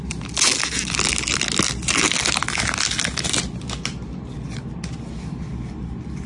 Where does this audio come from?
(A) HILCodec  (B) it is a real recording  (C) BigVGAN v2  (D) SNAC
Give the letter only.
B